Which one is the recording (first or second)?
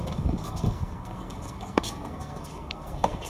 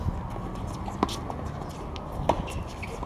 second